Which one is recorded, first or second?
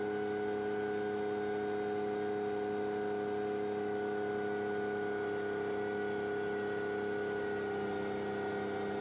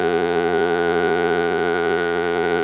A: first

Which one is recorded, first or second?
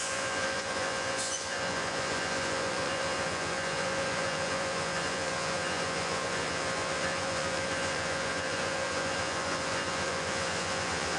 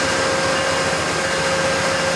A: second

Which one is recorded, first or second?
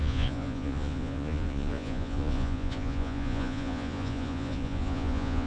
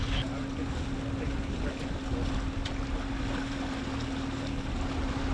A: second